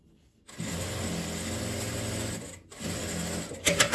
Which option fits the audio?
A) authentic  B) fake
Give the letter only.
A